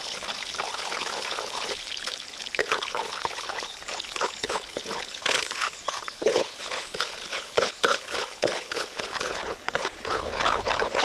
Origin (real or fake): fake